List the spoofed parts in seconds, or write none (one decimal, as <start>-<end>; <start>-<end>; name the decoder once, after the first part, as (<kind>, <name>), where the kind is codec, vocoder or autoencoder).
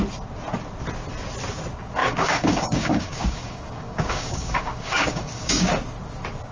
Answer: 2.0-5.7 (codec, DAC)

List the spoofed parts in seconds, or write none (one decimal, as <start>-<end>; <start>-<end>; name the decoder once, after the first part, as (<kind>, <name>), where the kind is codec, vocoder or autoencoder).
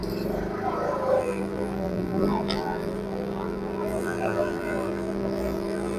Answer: 1.2-6.0 (vocoder, BigVGAN v2)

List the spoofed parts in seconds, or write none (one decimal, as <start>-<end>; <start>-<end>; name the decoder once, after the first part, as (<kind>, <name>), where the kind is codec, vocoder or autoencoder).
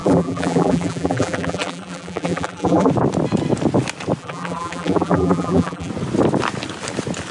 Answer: 0.0-2.9 (vocoder, BigVGAN v2); 4.2-5.9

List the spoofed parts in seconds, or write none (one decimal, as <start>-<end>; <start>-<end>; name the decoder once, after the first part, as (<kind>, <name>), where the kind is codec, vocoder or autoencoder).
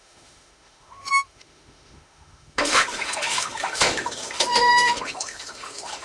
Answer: 0.0-6.0 (autoencoder, DAC-VAE)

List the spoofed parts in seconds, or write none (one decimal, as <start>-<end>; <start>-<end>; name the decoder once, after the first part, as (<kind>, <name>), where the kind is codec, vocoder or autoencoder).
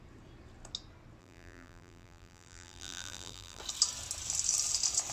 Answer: 1.2-3.6 (vocoder, BigVGAN v2)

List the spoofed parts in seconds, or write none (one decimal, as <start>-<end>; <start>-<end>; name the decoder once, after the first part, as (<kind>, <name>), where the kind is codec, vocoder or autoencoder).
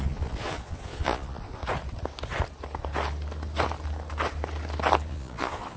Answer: 0.0-1.6 (vocoder, Vocos); 5.1-5.8